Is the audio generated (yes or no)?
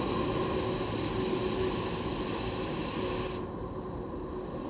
no